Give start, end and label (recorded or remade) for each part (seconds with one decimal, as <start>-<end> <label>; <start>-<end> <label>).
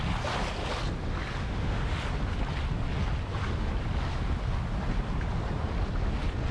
0.0-1.4 recorded; 1.4-2.0 remade; 2.0-6.5 recorded